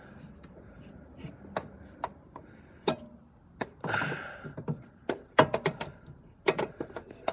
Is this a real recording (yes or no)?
yes